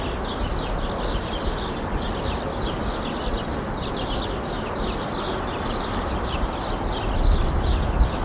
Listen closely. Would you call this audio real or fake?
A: real